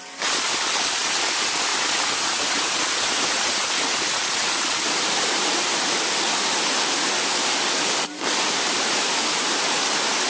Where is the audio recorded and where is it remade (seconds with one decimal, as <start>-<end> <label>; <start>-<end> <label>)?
0.0-1.7 recorded; 1.7-4.6 remade; 4.6-10.3 recorded